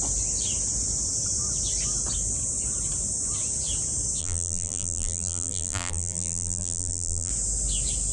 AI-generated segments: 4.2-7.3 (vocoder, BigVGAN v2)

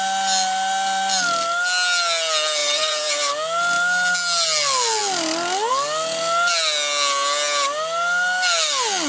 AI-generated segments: 2.6-3.3 (vocoder, BigVGAN v2)

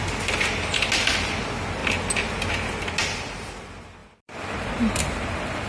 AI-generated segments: 4.0-5.7 (vocoder, BigVGAN v2)

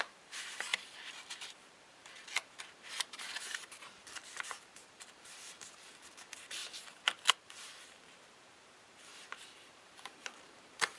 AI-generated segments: 0.0-6.6 (vocoder, BigVGAN v2); 7.3-11.0

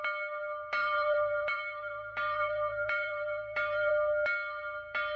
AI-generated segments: 0.8-3.9 (vocoder, BigVGAN v2)

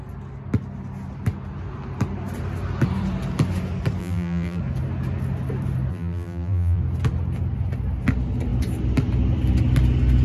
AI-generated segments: 4.0-4.6 (vocoder, BigVGAN v2); 5.9-6.8

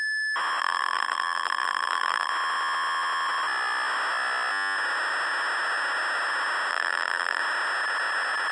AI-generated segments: 0.6-2.3 (vocoder, BigVGAN v2); 6.7-7.4

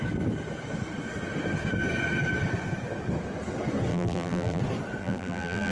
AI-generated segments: 3.9-4.6 (vocoder, BigVGAN v2); 5.0-5.7